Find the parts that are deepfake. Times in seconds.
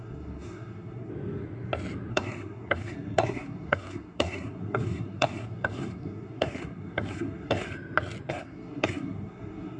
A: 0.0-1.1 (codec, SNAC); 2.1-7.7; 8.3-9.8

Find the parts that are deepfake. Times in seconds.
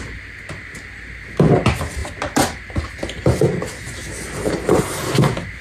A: none